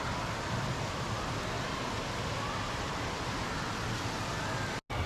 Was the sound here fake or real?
real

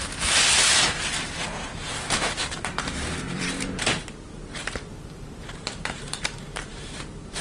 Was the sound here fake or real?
fake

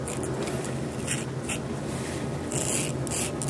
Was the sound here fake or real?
real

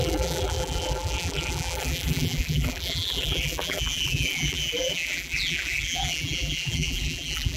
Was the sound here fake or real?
fake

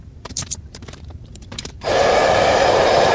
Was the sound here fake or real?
fake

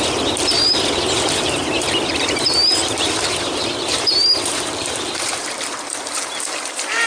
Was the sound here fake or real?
fake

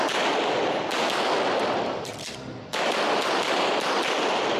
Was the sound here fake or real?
real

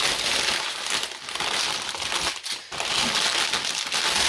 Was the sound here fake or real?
real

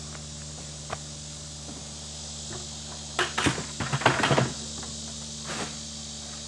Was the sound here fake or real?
real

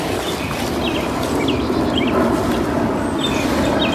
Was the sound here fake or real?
fake